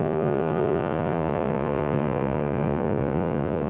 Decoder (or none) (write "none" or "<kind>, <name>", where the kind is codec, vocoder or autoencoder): vocoder, Vocos